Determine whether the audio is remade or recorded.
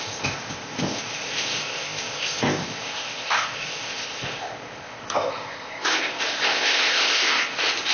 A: remade